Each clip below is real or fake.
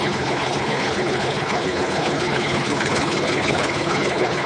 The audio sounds fake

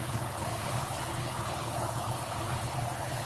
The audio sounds fake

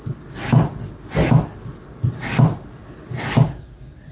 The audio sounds real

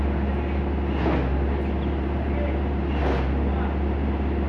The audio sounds real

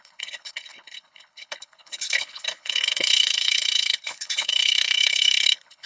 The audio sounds fake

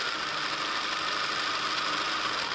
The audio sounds real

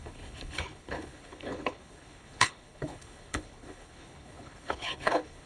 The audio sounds fake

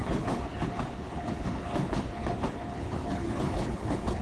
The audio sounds fake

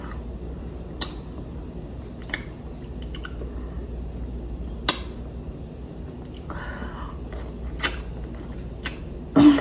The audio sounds real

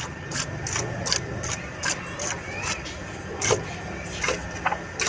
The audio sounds real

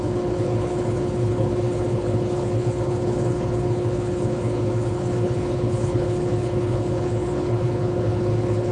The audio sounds fake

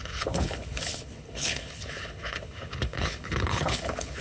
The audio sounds fake